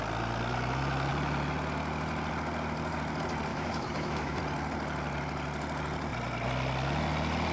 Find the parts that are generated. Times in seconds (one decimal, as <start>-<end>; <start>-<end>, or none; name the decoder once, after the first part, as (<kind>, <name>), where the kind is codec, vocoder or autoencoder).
3.5-4.4 (autoencoder, DAC-VAE)